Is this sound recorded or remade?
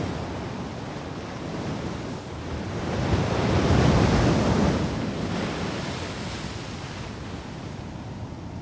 recorded